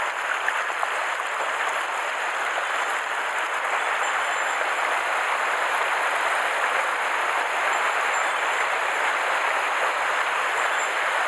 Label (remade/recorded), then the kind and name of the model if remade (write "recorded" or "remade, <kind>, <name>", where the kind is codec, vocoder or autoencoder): recorded